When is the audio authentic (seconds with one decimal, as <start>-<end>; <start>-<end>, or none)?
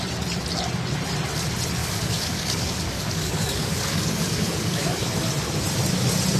0.0-1.8; 5.1-6.4